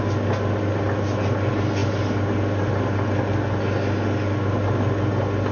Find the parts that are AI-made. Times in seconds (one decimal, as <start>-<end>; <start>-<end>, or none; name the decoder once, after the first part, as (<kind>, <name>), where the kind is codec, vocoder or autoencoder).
none